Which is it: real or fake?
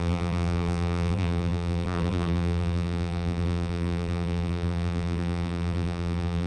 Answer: fake